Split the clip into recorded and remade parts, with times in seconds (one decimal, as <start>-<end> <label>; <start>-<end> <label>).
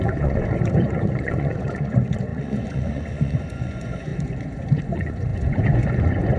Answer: 0.0-6.4 remade